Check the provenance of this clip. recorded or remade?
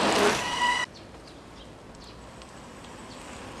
recorded